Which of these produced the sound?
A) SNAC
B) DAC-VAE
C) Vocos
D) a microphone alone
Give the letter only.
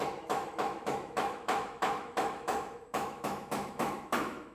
B